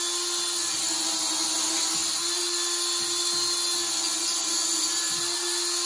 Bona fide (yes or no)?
yes